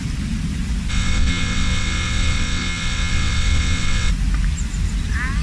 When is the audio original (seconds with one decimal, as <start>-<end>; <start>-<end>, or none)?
0.0-0.9; 4.1-5.4